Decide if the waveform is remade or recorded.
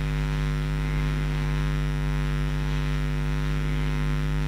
recorded